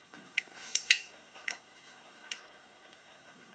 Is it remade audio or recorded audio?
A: remade